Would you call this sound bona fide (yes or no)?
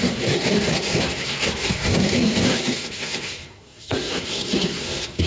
no